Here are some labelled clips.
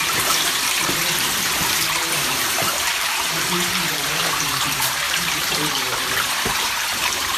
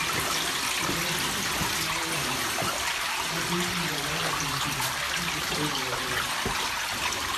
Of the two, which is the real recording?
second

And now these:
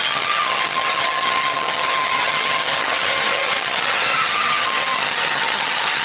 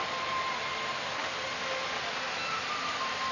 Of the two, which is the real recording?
second